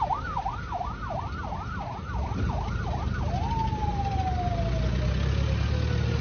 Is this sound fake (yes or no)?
no